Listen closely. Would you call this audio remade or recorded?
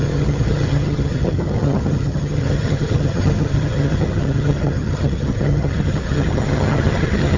remade